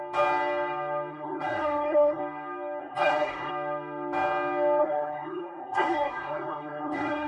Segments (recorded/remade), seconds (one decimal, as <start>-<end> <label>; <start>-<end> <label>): 0.0-1.1 recorded; 1.1-2.2 remade; 2.2-2.8 recorded; 2.8-3.5 remade; 3.5-4.8 recorded; 4.8-7.3 remade

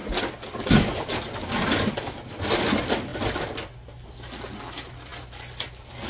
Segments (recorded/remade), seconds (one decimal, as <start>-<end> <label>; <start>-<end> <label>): 0.0-6.1 recorded

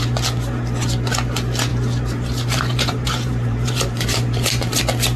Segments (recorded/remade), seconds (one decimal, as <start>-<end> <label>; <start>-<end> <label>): 0.0-1.7 recorded; 1.7-4.8 remade; 4.8-5.2 recorded